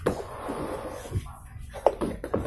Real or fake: fake